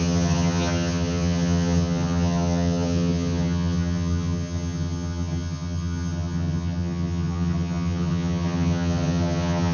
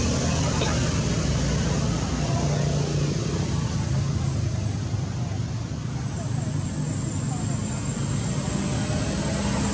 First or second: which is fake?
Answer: first